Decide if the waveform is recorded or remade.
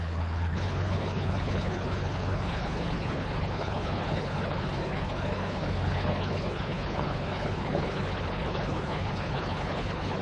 remade